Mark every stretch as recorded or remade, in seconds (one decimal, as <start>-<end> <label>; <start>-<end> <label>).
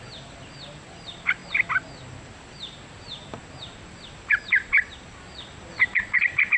0.0-1.4 recorded; 1.4-2.2 remade; 2.2-3.4 recorded; 3.4-4.5 remade; 4.5-6.6 recorded